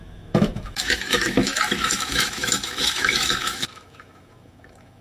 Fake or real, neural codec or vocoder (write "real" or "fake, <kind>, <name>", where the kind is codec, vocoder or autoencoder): fake, autoencoder, DAC-VAE